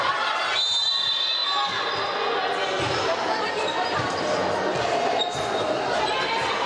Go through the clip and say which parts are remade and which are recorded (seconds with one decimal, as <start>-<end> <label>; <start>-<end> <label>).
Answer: 0.0-6.7 recorded